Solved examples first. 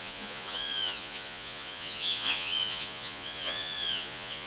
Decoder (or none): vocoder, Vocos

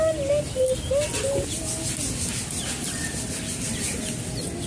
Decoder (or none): none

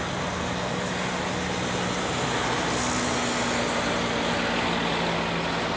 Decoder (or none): none